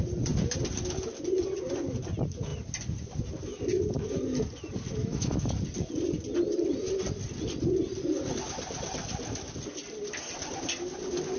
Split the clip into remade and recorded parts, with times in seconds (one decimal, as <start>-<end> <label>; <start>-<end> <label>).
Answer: 0.0-5.0 recorded; 5.0-5.5 remade; 5.5-11.4 recorded